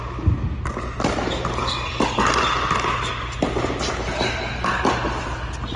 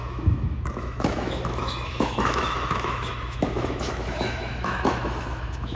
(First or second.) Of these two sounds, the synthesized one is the second